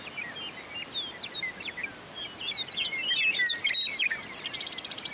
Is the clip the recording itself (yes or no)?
yes